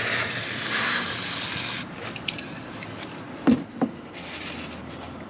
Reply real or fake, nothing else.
fake